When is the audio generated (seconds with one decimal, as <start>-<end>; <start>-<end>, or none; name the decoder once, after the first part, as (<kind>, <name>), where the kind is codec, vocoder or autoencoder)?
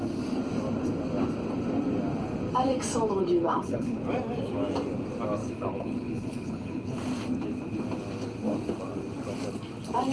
3.2-4.0 (codec, HILCodec); 5.4-7.0